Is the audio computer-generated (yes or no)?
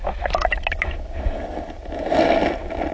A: no